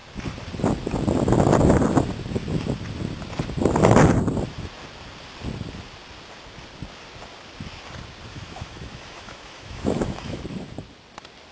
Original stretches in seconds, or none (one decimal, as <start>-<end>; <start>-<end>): 0.0-8.3; 10.4-11.5